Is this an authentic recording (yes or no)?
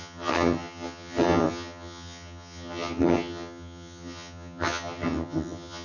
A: no